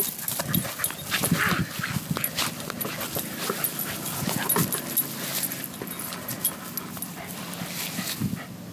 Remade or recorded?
recorded